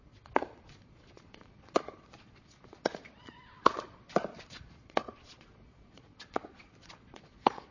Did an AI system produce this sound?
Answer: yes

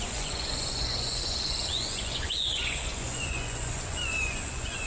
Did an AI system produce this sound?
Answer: yes